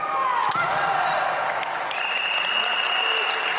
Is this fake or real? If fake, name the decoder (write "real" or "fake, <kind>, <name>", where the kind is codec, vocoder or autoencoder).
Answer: real